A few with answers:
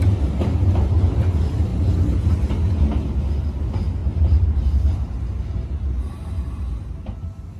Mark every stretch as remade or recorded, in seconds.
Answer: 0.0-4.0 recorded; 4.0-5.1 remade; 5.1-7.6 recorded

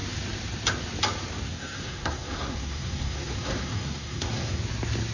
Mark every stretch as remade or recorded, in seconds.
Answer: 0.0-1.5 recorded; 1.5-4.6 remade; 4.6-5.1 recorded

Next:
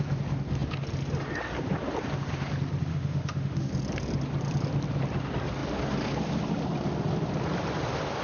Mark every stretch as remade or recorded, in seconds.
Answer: 0.0-2.9 recorded; 2.9-3.7 remade; 3.7-8.2 recorded